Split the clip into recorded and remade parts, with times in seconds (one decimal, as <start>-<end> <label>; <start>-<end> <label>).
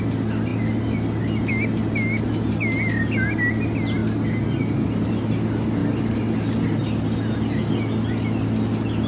0.0-9.1 recorded